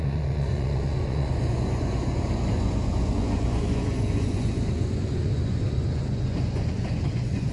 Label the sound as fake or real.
fake